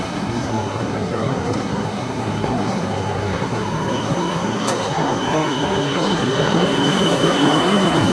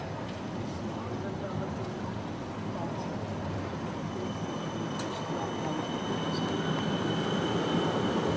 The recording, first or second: second